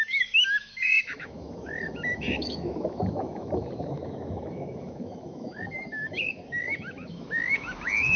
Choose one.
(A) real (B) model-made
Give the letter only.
B